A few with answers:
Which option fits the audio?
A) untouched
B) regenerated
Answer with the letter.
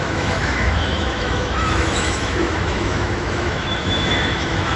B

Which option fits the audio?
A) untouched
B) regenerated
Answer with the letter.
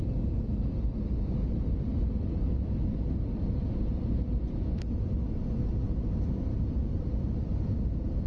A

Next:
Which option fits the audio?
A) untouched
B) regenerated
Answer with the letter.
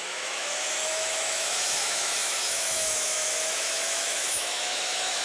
B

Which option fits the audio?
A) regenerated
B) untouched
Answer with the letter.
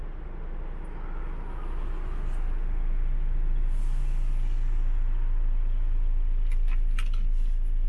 B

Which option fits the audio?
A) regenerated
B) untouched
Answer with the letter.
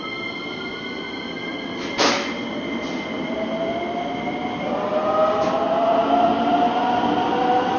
B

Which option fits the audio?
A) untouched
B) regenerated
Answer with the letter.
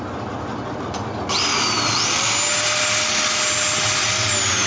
A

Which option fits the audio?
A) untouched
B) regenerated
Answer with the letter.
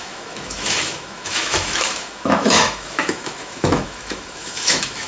B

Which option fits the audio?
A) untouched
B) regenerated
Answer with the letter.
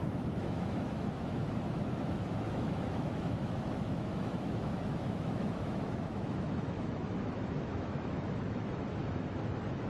B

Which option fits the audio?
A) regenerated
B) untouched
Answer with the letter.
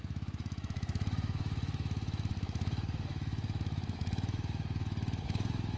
A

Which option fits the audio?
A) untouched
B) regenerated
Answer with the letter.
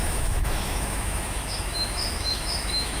B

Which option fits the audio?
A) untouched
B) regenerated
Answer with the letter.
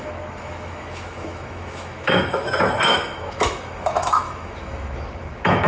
B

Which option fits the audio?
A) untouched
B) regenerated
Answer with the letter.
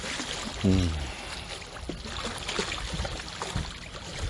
A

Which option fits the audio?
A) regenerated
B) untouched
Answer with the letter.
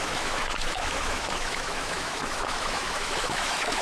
A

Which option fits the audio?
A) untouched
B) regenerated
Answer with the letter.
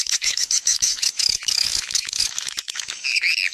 B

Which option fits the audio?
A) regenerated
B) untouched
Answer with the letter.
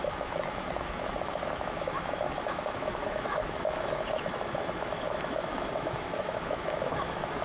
A